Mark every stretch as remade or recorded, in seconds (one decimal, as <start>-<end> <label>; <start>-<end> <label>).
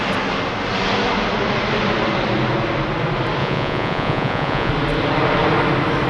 0.0-3.4 recorded; 3.4-4.7 remade; 4.7-6.1 recorded